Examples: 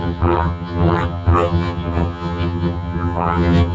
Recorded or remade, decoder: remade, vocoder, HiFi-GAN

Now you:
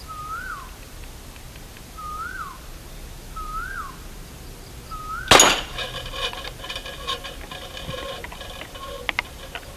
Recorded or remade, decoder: recorded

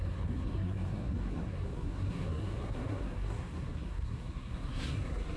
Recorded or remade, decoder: remade, codec, SNAC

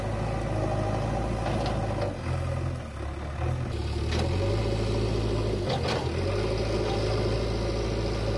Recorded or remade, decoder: recorded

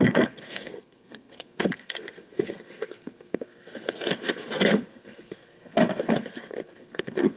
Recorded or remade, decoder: remade, codec, SNAC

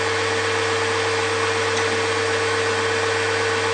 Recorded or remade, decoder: recorded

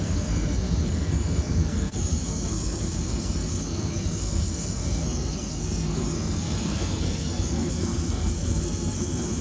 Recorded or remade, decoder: remade, codec, SNAC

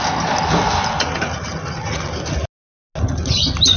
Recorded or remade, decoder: recorded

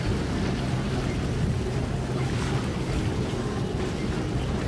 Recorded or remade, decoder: recorded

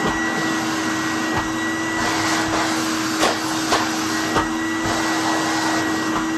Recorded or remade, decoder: recorded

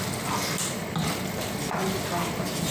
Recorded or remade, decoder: recorded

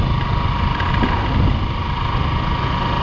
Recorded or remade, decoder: recorded